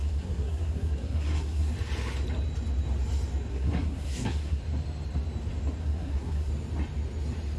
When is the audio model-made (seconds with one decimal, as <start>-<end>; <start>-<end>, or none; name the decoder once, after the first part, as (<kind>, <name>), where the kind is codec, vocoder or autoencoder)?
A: 0.0-1.7 (codec, SNAC); 3.5-4.6; 5.8-6.5